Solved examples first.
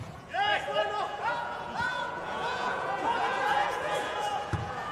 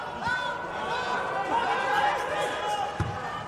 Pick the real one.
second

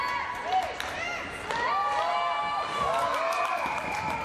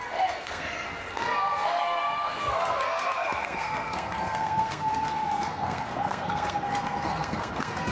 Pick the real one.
first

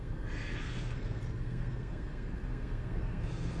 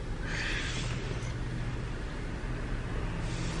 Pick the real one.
second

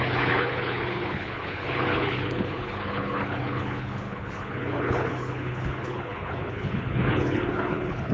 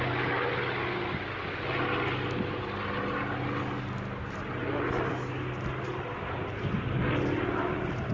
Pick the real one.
second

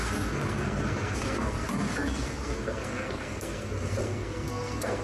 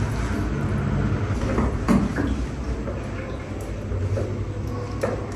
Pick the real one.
second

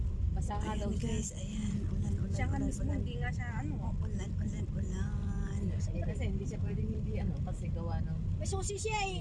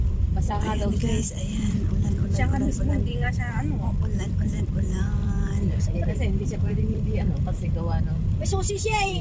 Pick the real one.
first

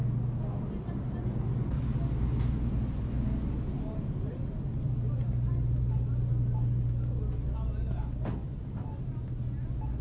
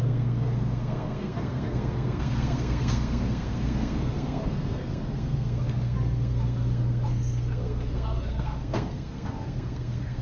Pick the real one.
first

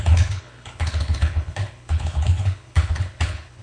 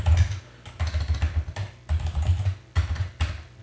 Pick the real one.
second